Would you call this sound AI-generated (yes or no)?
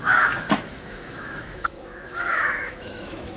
yes